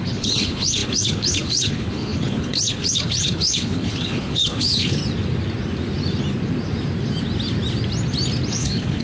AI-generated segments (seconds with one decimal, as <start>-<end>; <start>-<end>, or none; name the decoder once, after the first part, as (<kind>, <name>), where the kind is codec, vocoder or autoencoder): 0.0-5.0 (codec, HILCodec); 8.5-9.0